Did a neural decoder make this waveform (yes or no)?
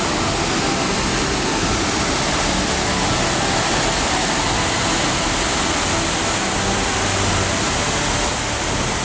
no